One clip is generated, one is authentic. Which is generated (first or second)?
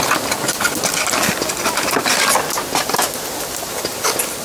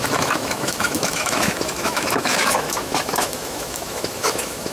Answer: second